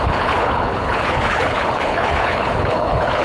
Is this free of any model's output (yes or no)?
no